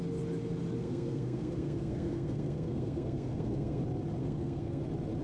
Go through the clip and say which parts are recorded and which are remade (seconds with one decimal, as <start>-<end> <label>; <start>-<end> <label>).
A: 0.0-0.8 recorded; 0.8-3.8 remade; 3.8-4.2 recorded; 4.2-4.8 remade; 4.8-5.2 recorded